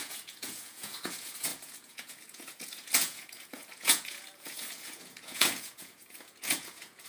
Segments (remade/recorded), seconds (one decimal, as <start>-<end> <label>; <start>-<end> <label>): 0.0-7.1 remade